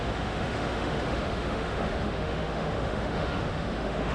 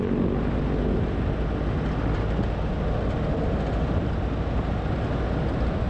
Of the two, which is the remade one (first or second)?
first